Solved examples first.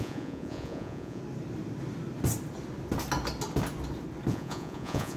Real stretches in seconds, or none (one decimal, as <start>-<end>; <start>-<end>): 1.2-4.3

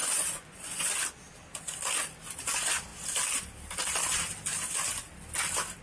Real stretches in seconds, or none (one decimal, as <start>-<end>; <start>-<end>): 0.9-5.8

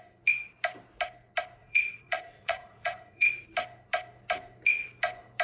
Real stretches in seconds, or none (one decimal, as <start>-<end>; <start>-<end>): 0.0-1.6; 3.3-5.4

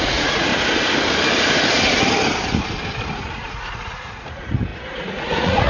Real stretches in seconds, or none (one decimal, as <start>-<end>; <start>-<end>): 0.5-3.2

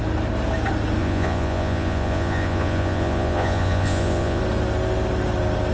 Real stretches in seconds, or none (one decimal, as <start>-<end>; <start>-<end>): 0.0-1.0; 4.4-5.7